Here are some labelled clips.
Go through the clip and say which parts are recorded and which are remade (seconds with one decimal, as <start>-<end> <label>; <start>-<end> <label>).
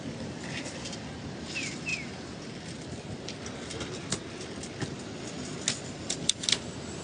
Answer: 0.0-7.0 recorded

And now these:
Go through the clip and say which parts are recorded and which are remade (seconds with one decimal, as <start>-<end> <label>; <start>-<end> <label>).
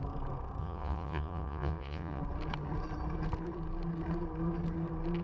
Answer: 0.0-0.6 recorded; 0.6-2.2 remade; 2.2-5.2 recorded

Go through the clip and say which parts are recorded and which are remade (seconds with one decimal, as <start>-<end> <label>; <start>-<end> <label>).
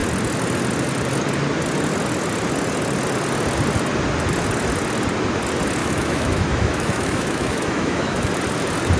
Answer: 0.0-5.8 recorded; 5.8-8.3 remade; 8.3-9.0 recorded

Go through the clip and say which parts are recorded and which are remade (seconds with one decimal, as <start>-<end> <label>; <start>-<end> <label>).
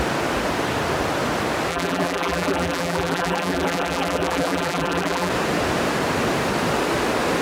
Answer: 0.0-1.7 recorded; 1.7-5.3 remade; 5.3-7.4 recorded